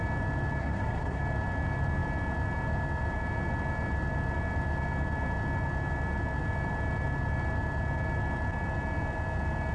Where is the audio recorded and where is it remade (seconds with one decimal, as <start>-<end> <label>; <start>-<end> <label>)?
0.0-0.6 recorded; 0.6-1.2 remade; 1.2-9.7 recorded